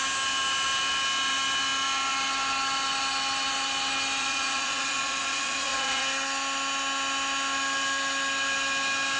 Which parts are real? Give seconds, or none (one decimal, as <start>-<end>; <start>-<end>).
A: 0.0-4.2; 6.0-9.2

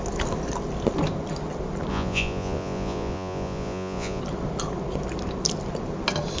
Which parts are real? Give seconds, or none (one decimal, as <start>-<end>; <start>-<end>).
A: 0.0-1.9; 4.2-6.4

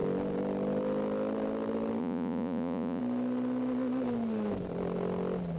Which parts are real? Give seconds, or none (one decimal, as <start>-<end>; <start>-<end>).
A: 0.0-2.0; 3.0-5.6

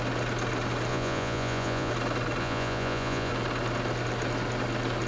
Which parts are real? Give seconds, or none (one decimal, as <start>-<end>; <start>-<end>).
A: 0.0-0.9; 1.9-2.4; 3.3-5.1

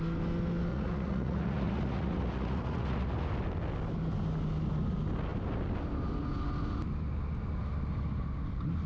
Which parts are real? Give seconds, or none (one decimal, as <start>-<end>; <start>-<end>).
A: 0.0-0.7; 3.1-8.9

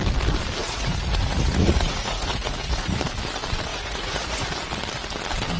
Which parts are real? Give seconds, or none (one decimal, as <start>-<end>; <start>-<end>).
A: 0.0-0.6; 3.0-3.7; 4.5-5.6